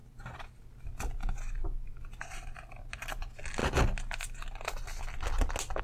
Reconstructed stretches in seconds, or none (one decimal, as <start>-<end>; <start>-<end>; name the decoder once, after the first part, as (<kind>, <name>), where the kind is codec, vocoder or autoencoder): 0.0-0.6 (vocoder, BigVGAN v2)